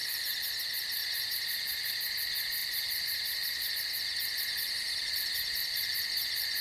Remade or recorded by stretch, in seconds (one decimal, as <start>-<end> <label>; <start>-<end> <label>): 0.0-1.0 recorded; 1.0-2.0 remade; 2.0-2.6 recorded; 2.6-3.7 remade; 3.7-6.6 recorded